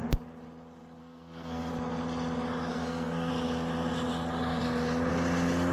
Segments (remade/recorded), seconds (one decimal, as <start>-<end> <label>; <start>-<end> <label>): 0.0-1.0 recorded; 1.0-1.7 remade; 1.7-2.7 recorded; 2.7-3.3 remade; 3.3-5.7 recorded